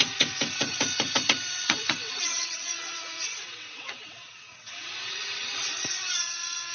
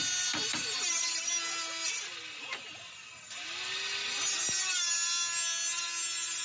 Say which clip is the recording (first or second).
second